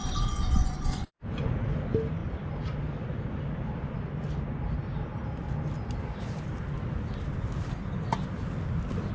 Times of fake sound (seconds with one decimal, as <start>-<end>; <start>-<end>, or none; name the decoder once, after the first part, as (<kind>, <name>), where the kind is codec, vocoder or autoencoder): 0.0-1.5 (vocoder, Vocos)